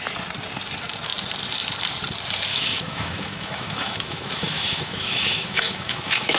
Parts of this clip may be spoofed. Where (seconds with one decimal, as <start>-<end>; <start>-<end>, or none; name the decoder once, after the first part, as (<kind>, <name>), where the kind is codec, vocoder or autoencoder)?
2.5-6.4 (autoencoder, DAC-VAE)